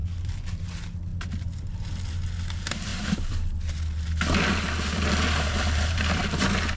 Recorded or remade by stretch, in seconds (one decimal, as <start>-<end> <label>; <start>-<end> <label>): 0.0-0.7 remade; 0.7-2.9 recorded; 2.9-3.6 remade; 3.6-4.5 recorded; 4.5-6.2 remade; 6.2-6.8 recorded